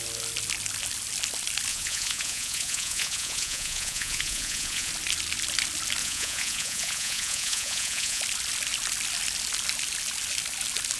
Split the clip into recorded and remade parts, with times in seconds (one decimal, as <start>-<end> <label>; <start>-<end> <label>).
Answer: 0.0-1.7 recorded; 1.7-4.9 remade; 4.9-6.0 recorded; 6.0-8.2 remade; 8.2-11.0 recorded